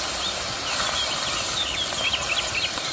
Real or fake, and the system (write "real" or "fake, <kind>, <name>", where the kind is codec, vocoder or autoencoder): real